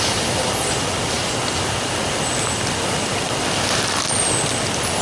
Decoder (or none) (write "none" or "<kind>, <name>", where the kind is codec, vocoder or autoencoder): none